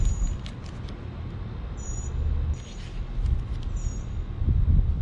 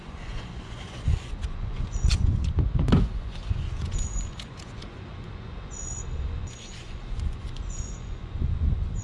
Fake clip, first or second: second